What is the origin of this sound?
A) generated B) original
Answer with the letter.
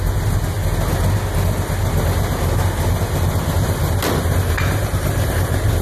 B